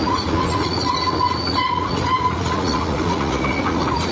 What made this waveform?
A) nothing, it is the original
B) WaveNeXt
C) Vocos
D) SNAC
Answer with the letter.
C